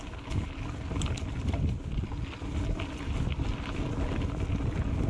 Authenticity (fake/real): real